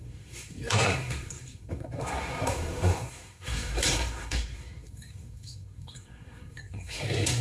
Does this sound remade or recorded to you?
remade